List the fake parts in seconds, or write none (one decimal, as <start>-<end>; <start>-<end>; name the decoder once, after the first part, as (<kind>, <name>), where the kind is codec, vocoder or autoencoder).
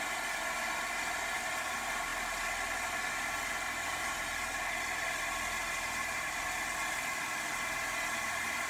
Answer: none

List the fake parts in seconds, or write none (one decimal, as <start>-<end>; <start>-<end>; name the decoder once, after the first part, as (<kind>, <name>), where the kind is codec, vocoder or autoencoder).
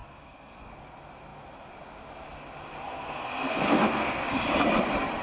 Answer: 0.0-0.7 (codec, SNAC); 2.9-4.2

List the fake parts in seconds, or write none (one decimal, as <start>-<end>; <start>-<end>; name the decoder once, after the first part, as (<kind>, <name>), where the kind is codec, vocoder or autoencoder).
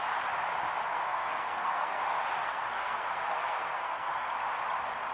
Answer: 0.9-2.0 (codec, SNAC); 2.4-4.3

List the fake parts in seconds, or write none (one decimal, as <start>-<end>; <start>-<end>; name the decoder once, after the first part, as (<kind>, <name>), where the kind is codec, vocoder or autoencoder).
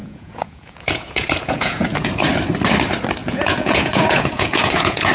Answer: 0.0-2.2 (vocoder, Vocos); 3.2-5.1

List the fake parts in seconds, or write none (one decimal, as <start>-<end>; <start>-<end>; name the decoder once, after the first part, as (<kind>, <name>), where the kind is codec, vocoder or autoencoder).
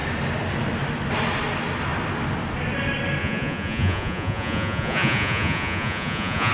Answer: 3.2-6.5 (vocoder, Vocos)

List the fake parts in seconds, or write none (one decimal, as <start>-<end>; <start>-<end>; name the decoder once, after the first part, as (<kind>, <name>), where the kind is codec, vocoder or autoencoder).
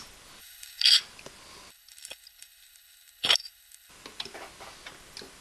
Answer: 0.4-1.0 (codec, HILCodec); 1.7-3.9